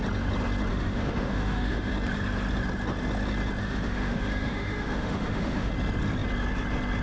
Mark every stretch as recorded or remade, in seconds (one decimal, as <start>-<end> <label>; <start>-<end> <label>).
0.0-0.7 recorded; 0.7-1.9 remade; 1.9-3.6 recorded; 3.6-5.7 remade; 5.7-7.0 recorded